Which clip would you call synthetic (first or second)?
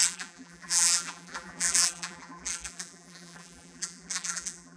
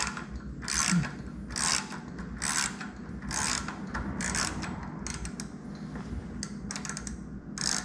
first